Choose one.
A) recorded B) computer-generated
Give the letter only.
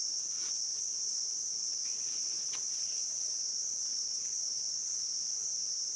B